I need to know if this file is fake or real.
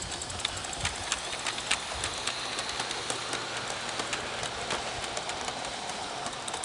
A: real